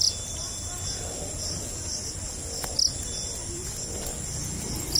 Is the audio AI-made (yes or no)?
no